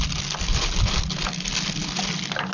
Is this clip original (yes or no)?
yes